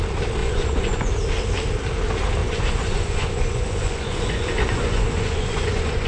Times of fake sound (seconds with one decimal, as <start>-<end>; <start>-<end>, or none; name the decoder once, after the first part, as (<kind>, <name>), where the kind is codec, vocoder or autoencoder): 0.4-1.1 (vocoder, Vocos); 2.4-6.1